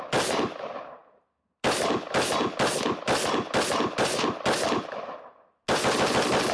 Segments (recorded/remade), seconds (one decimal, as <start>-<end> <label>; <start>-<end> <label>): 0.0-6.5 recorded

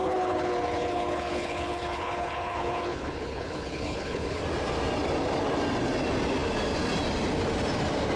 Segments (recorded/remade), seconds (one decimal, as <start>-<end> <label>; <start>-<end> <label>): 0.0-4.4 remade; 4.4-8.2 recorded

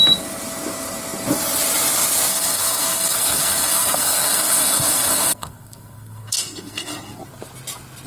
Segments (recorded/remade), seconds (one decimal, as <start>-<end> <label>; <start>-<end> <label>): 0.0-2.3 recorded; 2.3-7.2 remade; 7.2-8.1 recorded

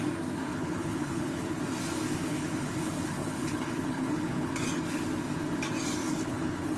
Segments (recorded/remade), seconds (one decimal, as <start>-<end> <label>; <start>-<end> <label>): 0.0-0.5 recorded; 0.5-1.6 remade; 1.6-2.2 recorded; 2.2-4.5 remade; 4.5-6.0 recorded; 6.0-6.8 remade

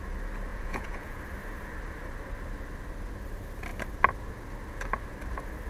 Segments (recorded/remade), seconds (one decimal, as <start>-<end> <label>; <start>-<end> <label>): 0.0-0.5 recorded; 0.5-1.2 remade; 1.2-5.7 recorded

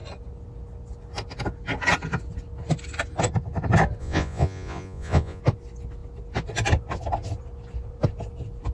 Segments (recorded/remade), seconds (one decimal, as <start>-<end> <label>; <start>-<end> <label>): 0.0-4.0 recorded; 4.0-5.4 remade; 5.4-8.7 recorded

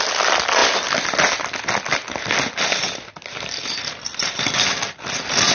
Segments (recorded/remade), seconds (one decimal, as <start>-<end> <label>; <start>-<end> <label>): 0.0-5.5 recorded

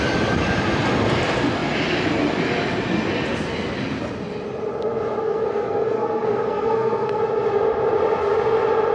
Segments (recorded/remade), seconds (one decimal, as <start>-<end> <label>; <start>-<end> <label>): 0.0-5.2 recorded; 5.2-7.2 remade; 7.2-8.9 recorded